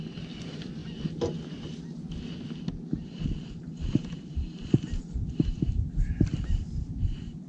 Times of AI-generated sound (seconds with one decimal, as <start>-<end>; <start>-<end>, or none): 0.0-0.8; 2.7-7.5